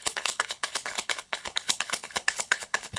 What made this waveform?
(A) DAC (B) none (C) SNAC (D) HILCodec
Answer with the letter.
D